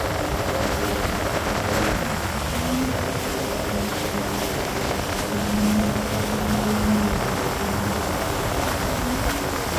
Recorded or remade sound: recorded